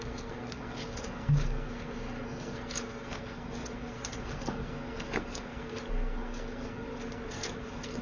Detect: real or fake fake